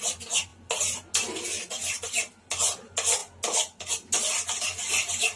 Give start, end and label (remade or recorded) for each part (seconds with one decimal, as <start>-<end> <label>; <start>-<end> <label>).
0.0-5.4 recorded